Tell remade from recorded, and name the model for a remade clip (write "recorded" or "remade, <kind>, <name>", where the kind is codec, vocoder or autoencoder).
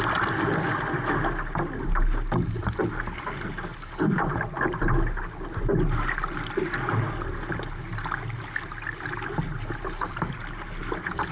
recorded